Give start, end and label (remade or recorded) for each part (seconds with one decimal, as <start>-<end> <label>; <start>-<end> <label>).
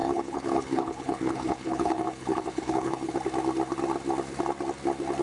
0.0-3.1 remade; 3.1-5.2 recorded